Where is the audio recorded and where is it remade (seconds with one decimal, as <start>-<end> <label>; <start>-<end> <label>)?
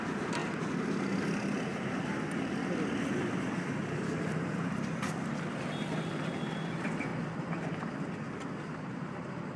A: 0.0-1.7 recorded; 1.7-4.7 remade; 4.7-9.6 recorded